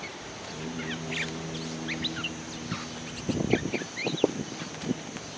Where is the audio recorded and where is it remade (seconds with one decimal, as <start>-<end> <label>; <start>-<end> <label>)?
0.0-5.4 recorded